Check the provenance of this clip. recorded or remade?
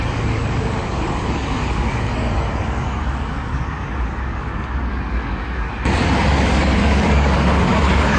remade